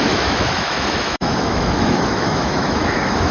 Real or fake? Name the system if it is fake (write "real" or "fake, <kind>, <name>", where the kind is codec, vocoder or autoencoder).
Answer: fake, autoencoder, DAC-VAE